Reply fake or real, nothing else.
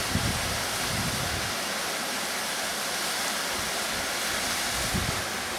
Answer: real